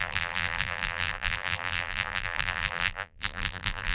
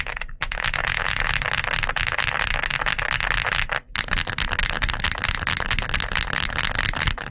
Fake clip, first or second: first